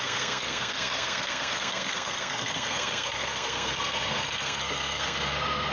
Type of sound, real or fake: fake